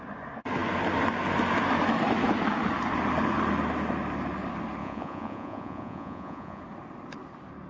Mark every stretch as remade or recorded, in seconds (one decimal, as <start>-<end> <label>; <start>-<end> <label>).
0.0-4.8 recorded; 4.8-6.6 remade; 6.6-7.7 recorded